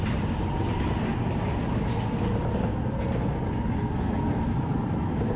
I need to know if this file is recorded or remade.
recorded